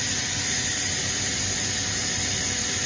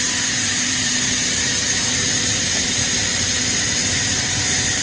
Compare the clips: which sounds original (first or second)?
first